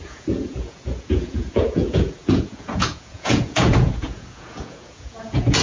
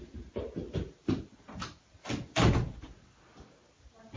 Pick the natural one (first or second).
second